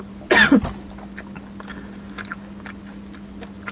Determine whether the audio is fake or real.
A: real